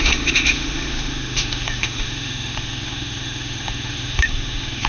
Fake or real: fake